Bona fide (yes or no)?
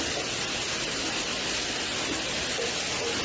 yes